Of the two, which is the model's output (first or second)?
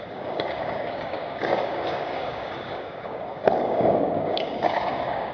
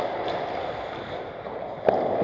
first